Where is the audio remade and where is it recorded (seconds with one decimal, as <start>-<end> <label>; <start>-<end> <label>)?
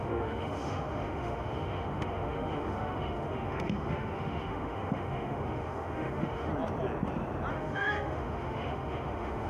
0.0-6.5 remade; 6.5-7.5 recorded; 7.5-9.5 remade